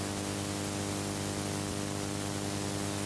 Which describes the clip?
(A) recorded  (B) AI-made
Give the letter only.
A